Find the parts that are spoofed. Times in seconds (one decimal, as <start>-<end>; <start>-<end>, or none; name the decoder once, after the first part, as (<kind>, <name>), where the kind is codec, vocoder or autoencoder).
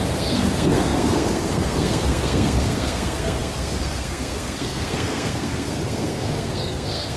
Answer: 0.0-7.2 (codec, SNAC)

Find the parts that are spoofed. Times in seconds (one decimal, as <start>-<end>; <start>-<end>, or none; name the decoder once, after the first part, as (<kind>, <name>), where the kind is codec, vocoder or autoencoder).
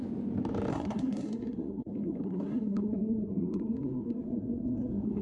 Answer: 0.7-5.2 (codec, SNAC)